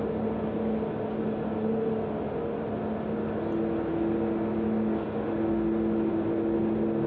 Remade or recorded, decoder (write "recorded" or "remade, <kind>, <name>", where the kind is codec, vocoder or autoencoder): recorded